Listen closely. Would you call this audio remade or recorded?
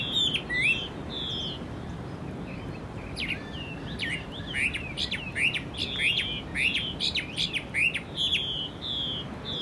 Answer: recorded